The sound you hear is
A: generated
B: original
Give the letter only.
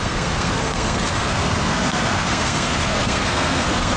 A